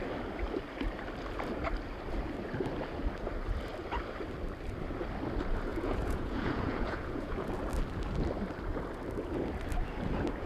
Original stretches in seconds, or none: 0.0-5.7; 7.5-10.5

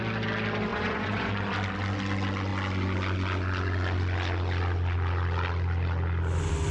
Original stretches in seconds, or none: 0.0-0.7; 1.3-6.7

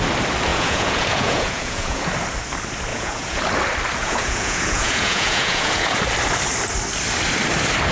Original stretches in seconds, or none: 0.0-0.5; 2.1-2.9; 3.4-4.0; 6.0-7.9

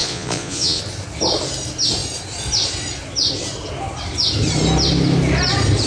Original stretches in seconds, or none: 0.8-5.9

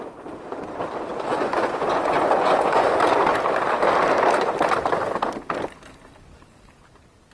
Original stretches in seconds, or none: 0.0-1.3; 3.0-7.3

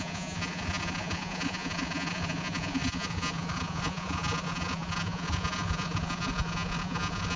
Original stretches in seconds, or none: none